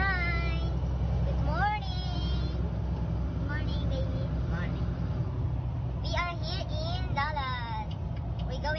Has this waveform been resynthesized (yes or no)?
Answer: no